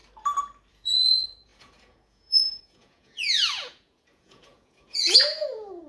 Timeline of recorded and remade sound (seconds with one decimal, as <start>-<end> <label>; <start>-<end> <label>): 0.0-0.7 recorded; 0.7-5.9 remade